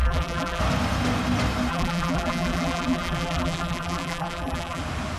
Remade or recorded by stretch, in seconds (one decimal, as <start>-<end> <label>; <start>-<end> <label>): 0.0-0.6 remade; 0.6-1.7 recorded; 1.7-4.8 remade; 4.8-5.2 recorded